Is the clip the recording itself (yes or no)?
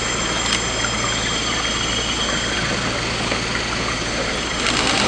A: yes